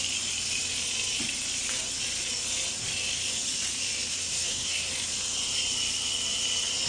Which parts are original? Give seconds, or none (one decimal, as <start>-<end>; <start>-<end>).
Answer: 0.0-4.1; 4.9-6.9